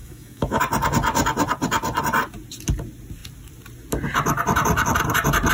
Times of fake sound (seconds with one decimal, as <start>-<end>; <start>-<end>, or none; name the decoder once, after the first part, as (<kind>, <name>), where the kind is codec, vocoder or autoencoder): 0.0-0.6 (autoencoder, DAC-VAE)